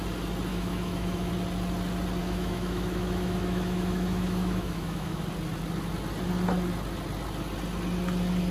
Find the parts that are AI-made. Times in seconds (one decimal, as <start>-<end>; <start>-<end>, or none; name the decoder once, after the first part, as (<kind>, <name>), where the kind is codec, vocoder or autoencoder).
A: 0.5-1.3 (autoencoder, DAC-VAE); 2.2-5.2